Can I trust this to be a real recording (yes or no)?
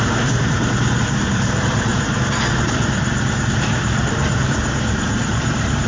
no